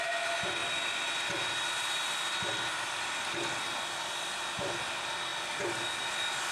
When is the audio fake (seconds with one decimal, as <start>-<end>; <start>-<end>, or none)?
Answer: 0.6-3.8